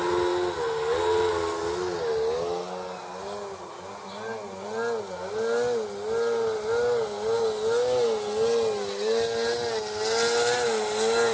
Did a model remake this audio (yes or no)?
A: no